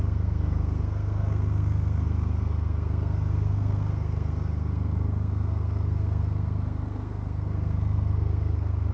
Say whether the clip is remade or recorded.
remade